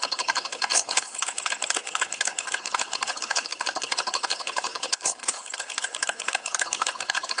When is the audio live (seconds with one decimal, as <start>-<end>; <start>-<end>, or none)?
none